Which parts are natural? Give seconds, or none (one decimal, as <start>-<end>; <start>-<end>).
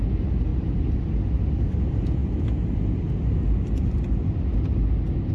0.0-0.5; 1.6-5.3